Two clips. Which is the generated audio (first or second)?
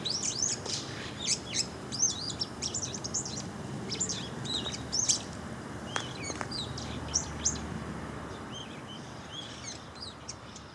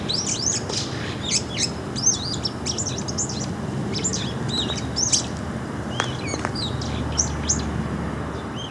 first